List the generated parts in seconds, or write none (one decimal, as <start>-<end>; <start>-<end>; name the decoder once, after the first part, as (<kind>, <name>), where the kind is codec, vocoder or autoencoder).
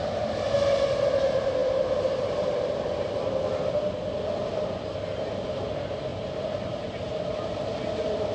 1.6-3.5 (vocoder, BigVGAN v2); 6.1-8.3